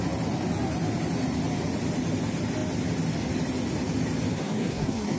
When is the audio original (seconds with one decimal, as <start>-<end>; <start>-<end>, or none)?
0.0-4.3